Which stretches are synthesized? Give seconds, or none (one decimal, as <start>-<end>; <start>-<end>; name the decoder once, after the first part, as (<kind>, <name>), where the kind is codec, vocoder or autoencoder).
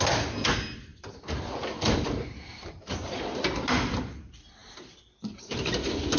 0.9-3.2 (vocoder, BigVGAN v2); 4.6-6.2